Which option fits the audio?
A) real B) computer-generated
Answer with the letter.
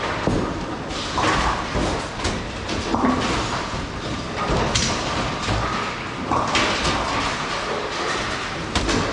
A